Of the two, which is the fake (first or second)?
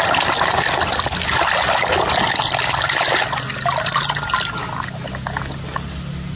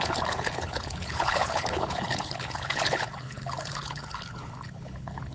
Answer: second